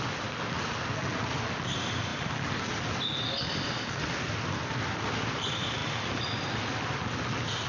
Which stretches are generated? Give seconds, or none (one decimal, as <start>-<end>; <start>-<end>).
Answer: none